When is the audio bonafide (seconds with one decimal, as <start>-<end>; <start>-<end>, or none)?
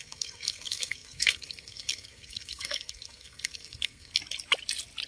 4.1-5.1